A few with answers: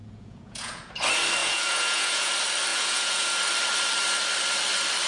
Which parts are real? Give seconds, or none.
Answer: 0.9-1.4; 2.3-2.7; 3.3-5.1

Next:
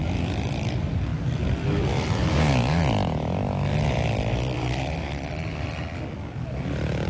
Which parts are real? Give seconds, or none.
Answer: 0.0-7.1

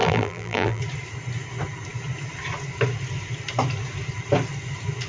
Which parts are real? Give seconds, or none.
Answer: 0.8-5.1

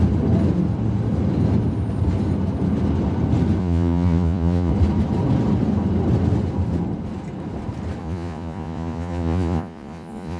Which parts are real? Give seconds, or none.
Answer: 0.0-3.6; 4.7-8.0